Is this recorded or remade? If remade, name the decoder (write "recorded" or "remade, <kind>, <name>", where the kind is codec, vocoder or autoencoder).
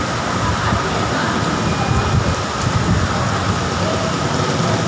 recorded